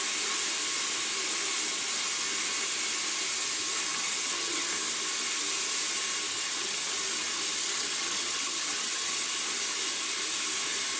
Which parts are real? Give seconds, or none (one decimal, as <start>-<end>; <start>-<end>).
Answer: 0.0-3.9; 4.7-6.3; 6.9-7.6; 9.3-11.0